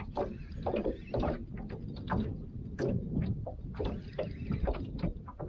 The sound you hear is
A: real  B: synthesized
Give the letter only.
A